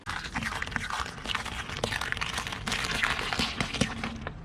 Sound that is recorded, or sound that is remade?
recorded